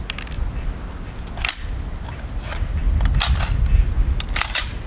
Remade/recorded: recorded